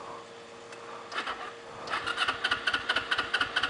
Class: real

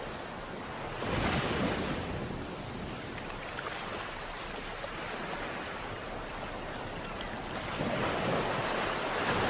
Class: real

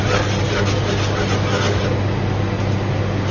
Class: real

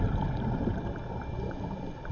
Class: fake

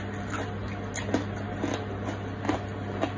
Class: real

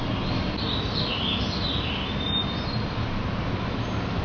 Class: real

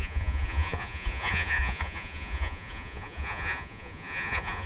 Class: fake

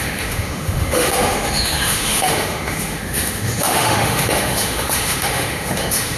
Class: fake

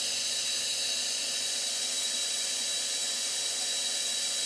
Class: fake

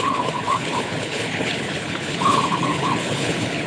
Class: fake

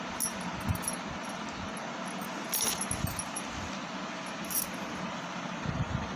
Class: real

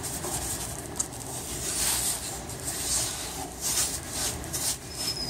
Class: fake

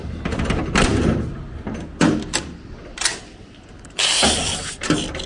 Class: real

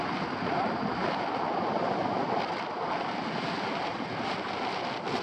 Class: real